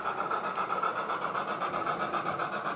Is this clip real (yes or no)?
yes